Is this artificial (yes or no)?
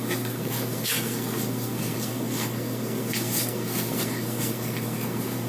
yes